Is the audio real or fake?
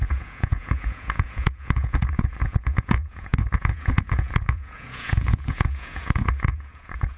fake